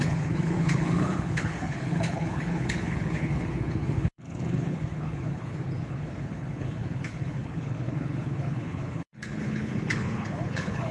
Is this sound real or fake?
fake